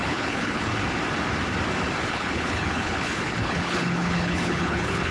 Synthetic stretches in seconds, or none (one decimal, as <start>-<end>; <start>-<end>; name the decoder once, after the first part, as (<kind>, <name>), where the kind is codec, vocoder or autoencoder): 0.0-0.7 (codec, HILCodec); 2.1-5.1